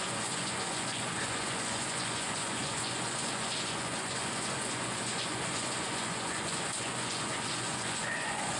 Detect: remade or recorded remade